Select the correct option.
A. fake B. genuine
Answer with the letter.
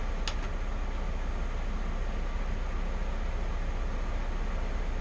B